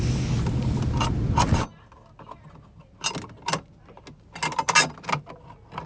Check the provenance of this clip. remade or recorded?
recorded